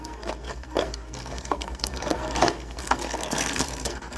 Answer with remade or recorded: remade